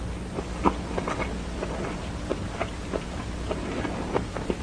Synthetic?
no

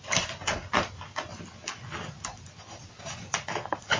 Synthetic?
no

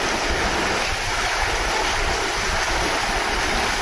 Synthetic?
no